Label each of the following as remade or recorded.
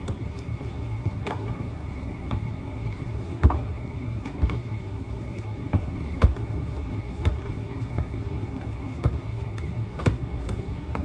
remade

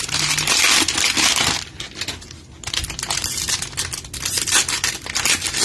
recorded